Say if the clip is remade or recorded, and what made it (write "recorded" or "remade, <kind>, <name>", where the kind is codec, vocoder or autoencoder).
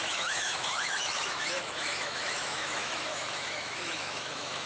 remade, autoencoder, DAC-VAE